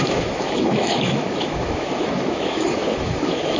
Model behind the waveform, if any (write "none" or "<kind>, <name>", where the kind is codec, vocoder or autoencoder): autoencoder, DAC-VAE